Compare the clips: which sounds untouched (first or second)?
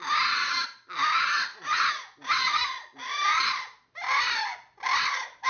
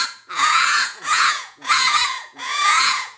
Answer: first